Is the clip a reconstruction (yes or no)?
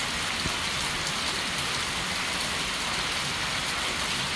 no